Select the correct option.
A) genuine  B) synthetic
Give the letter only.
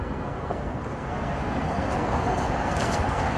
B